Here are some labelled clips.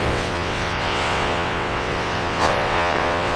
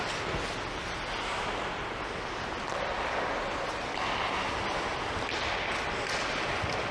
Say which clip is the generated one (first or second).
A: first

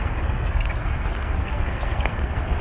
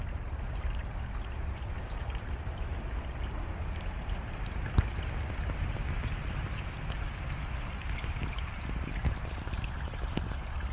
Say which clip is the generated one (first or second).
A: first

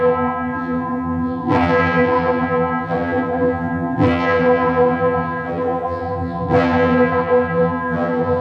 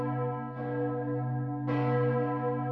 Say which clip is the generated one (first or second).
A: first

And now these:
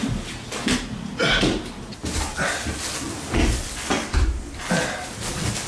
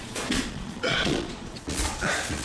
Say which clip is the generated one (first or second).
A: second